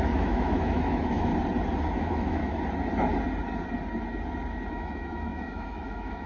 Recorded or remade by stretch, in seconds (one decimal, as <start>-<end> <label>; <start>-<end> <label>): 0.0-1.3 remade; 1.3-2.0 recorded; 2.0-2.4 remade; 2.4-4.7 recorded; 4.7-6.3 remade